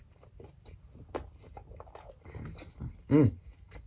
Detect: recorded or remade recorded